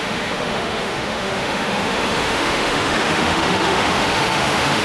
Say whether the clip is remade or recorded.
remade